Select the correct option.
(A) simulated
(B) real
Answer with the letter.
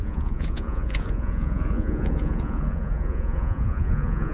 A